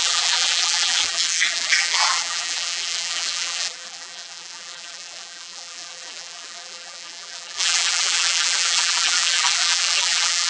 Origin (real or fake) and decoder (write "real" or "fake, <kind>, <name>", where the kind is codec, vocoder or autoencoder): fake, vocoder, BigVGAN v2